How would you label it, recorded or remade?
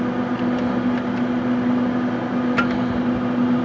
recorded